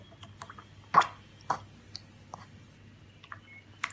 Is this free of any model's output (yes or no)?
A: yes